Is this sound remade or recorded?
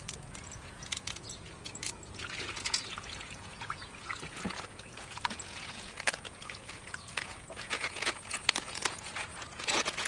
remade